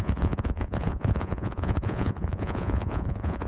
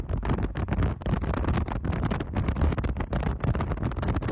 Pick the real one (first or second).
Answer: second